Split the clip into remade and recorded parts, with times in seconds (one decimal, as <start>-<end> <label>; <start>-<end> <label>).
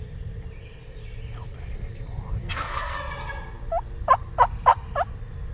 0.0-2.4 recorded; 2.4-3.1 remade; 3.1-5.5 recorded